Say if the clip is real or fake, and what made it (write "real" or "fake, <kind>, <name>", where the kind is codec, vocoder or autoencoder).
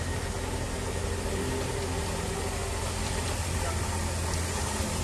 real